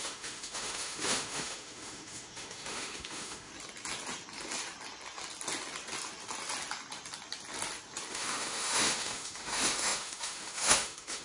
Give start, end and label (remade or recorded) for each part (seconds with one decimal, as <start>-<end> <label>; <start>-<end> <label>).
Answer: 0.0-3.5 remade; 3.5-8.1 recorded; 8.1-11.2 remade